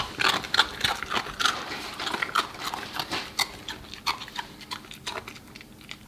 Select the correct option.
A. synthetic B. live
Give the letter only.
B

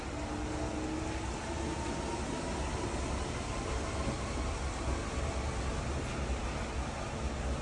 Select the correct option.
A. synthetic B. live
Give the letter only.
B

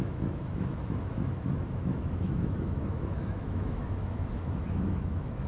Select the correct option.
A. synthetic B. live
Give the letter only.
A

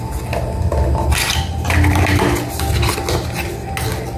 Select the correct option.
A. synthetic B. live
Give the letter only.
B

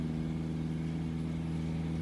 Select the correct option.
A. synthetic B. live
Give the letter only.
B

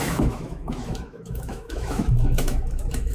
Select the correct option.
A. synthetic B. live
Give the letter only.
A